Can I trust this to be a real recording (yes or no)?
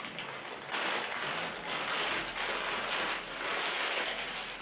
yes